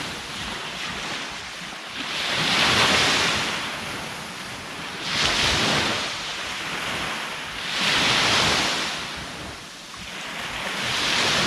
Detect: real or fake real